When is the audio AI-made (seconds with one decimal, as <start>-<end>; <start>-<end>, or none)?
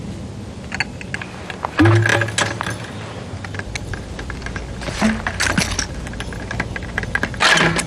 none